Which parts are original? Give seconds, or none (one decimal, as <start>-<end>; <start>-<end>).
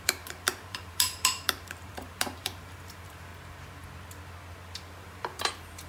3.3-5.0